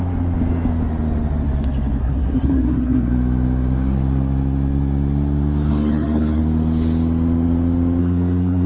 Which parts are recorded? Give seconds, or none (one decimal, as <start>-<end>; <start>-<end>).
0.0-2.0; 3.1-5.7; 6.4-8.0